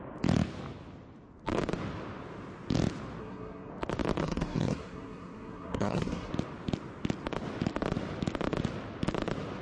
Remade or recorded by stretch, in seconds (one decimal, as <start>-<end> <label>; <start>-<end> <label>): 0.0-3.2 recorded; 3.2-3.7 remade; 3.7-4.2 recorded; 4.2-6.3 remade; 6.3-9.6 recorded